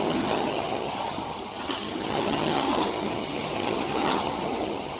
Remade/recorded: remade